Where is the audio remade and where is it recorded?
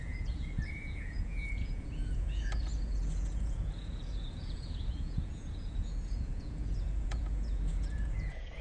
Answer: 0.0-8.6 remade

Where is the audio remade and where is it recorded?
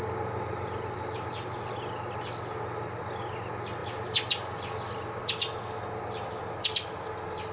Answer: 0.0-7.5 recorded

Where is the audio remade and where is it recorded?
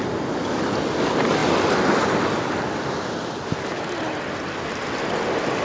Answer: 0.0-5.6 recorded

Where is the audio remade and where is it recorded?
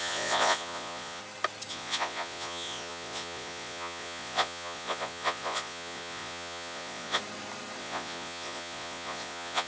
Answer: 0.0-1.2 remade; 1.2-1.7 recorded; 1.7-7.2 remade; 7.2-7.8 recorded; 7.8-9.7 remade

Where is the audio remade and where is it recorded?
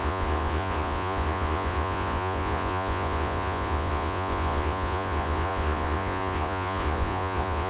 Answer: 0.0-7.7 remade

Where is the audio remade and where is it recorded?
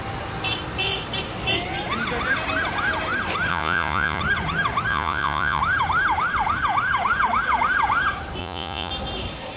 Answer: 0.0-3.5 recorded; 3.5-4.2 remade; 4.2-4.9 recorded; 4.9-5.6 remade; 5.6-8.4 recorded; 8.4-8.9 remade; 8.9-9.6 recorded